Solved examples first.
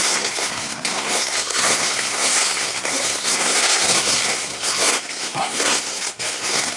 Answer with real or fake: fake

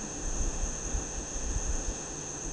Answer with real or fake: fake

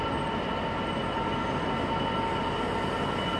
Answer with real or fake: real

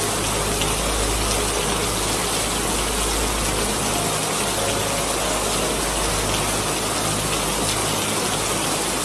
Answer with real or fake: real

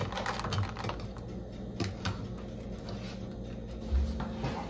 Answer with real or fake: real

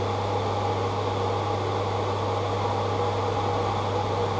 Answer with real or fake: real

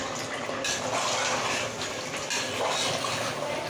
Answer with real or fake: real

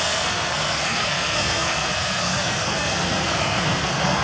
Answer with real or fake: fake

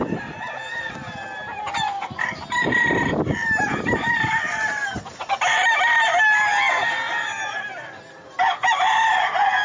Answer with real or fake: real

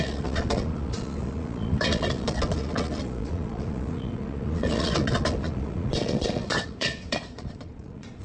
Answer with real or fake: fake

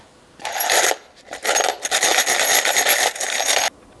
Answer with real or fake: real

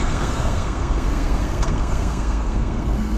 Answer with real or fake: fake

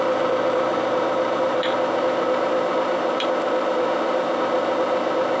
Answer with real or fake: fake